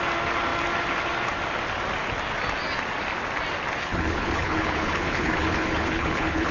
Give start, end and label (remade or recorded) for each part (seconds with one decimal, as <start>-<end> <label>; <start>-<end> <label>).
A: 0.0-3.8 recorded; 3.8-6.5 remade